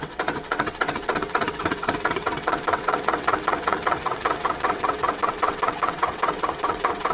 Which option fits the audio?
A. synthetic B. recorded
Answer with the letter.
A